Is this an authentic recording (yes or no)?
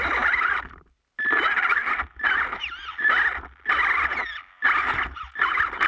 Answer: yes